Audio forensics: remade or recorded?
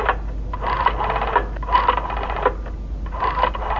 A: recorded